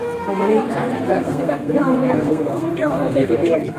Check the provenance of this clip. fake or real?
fake